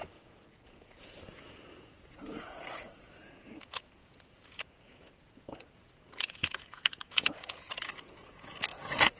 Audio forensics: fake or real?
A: fake